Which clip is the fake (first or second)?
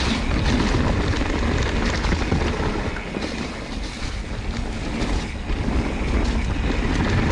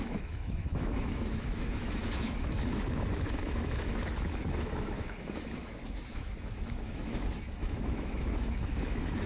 second